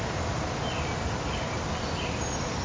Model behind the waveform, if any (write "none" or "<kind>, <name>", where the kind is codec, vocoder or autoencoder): none